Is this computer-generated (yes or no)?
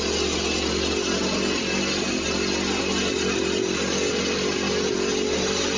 no